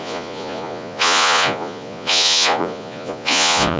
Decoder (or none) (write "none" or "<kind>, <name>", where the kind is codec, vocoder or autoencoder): vocoder, Vocos